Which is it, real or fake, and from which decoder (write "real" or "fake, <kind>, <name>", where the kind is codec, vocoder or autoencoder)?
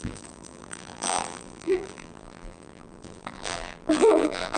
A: fake, vocoder, BigVGAN v2